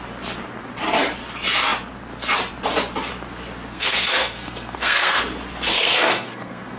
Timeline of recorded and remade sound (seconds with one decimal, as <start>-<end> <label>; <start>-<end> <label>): 0.0-3.7 recorded; 3.7-5.2 remade; 5.2-5.7 recorded; 5.7-6.8 remade